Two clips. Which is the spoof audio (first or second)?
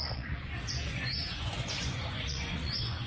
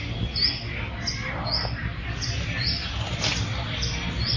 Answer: first